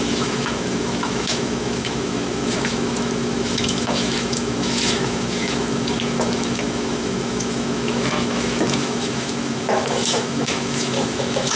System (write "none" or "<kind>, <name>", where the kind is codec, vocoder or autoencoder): autoencoder, DAC-VAE